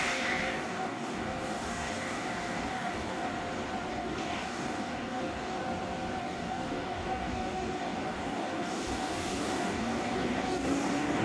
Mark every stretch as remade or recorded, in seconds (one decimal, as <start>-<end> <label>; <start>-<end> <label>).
0.0-3.3 remade; 3.3-3.9 recorded; 3.9-5.6 remade; 5.6-6.2 recorded; 6.2-11.2 remade